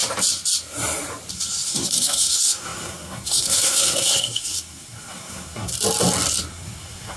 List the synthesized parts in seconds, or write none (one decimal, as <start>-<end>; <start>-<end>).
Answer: 1.3-5.7; 6.5-7.2